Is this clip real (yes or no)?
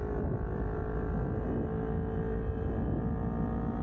yes